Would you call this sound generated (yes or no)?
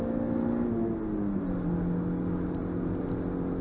no